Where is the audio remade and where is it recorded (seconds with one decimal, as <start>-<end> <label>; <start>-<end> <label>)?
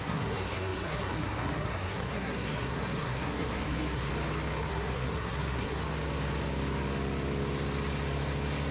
0.0-4.1 remade; 4.1-4.7 recorded; 4.7-5.8 remade; 5.8-8.7 recorded